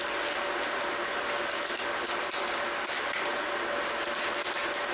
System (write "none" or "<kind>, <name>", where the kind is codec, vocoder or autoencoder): none